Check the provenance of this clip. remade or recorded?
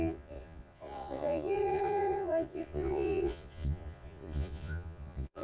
remade